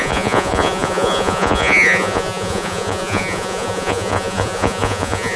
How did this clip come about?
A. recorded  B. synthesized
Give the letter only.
B